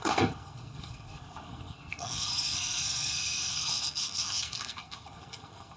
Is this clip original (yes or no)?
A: no